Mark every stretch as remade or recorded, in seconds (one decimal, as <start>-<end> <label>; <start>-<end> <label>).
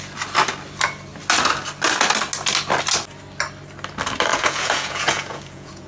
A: 0.0-4.3 recorded; 4.3-5.9 remade